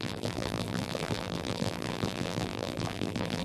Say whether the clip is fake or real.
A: fake